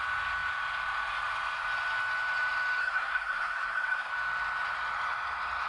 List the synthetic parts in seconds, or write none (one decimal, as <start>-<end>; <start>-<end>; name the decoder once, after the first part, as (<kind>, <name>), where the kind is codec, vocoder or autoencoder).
2.8-4.1 (codec, SNAC)